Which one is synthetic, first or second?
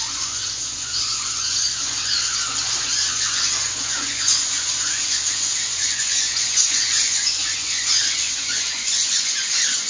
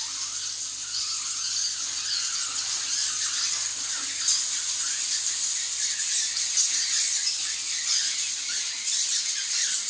first